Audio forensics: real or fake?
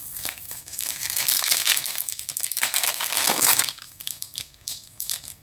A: fake